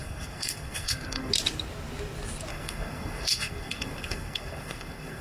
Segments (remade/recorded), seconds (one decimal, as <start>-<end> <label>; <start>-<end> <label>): 0.0-1.3 remade; 1.3-2.5 recorded; 2.5-5.2 remade